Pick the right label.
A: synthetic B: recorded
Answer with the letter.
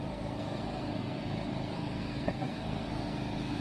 A